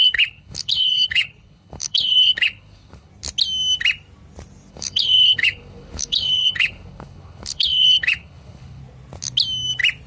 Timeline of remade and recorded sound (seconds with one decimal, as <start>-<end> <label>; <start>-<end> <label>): 0.0-3.1 remade; 3.1-4.7 recorded; 4.7-8.8 remade; 8.8-10.1 recorded